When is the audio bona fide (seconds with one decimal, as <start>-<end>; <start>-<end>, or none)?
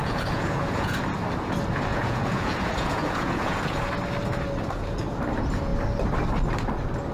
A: 1.0-1.9; 3.9-7.1